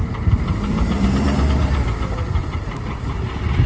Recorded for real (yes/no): no